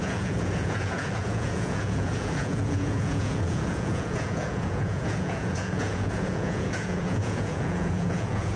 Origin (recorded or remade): remade